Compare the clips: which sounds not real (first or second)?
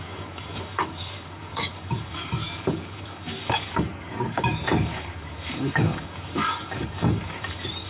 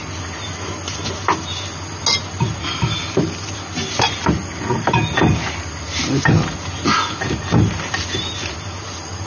first